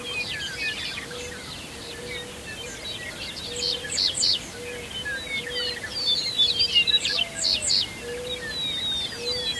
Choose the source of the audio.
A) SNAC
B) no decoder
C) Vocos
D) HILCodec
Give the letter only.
B